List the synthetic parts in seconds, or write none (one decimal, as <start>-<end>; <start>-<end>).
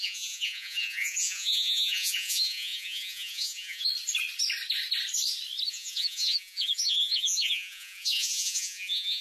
0.0-3.9; 5.7-9.2